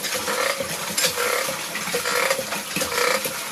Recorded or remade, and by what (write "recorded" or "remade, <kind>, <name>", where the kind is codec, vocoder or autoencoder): recorded